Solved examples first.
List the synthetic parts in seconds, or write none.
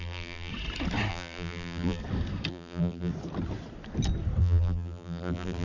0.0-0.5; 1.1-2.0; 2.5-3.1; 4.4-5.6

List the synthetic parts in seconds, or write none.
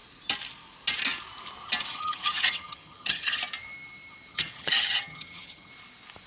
1.9-3.4; 4.3-5.7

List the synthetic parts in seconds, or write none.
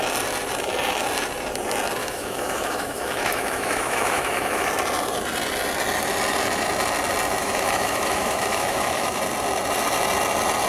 2.0-4.7; 7.4-9.2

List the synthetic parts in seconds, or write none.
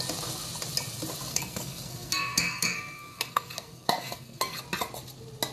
1.3-4.6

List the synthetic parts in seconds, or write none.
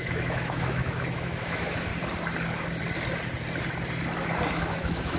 0.0-1.9; 4.5-5.2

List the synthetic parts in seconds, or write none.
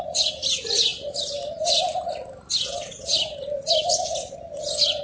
none